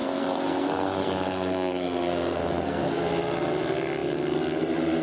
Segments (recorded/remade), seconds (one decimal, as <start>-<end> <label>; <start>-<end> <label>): 0.0-3.0 remade; 3.0-5.0 recorded